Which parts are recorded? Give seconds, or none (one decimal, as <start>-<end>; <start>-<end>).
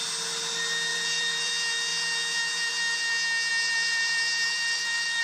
0.0-0.9; 1.5-3.5